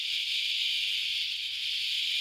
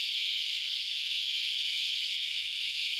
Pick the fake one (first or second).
second